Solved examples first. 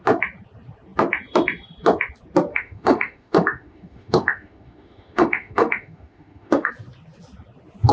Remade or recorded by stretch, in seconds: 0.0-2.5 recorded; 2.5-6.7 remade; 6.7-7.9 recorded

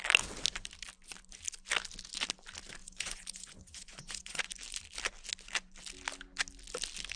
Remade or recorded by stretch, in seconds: 0.0-2.8 recorded; 2.8-4.4 remade; 4.4-7.2 recorded

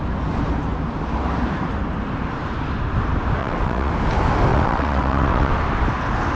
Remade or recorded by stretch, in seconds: 0.0-3.4 recorded; 3.4-3.9 remade; 3.9-4.5 recorded; 4.5-5.5 remade; 5.5-6.4 recorded

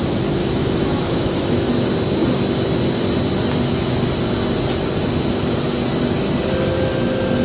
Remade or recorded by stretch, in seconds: 0.0-0.4 recorded; 0.4-1.7 remade; 1.7-7.4 recorded